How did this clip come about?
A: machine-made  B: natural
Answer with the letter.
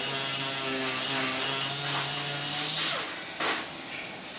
B